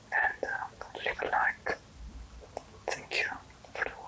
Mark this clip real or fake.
real